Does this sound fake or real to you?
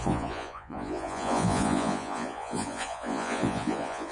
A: fake